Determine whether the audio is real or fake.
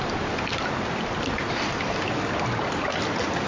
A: real